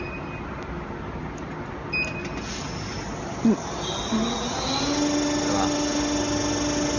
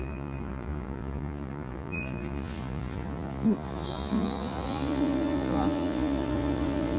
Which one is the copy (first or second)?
second